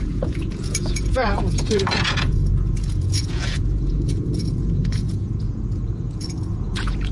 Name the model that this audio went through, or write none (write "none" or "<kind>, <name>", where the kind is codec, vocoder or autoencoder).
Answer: vocoder, Vocos